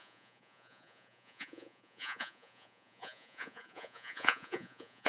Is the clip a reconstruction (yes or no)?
yes